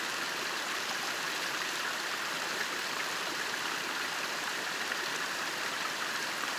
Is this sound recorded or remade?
remade